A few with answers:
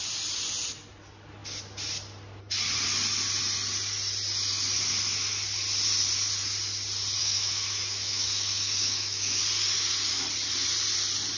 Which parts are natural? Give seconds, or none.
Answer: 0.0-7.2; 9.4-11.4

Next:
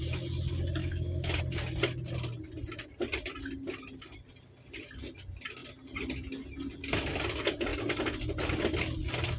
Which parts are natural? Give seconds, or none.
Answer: 0.0-0.8; 1.4-9.4

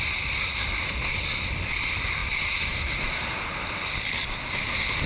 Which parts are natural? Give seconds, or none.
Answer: 0.0-5.1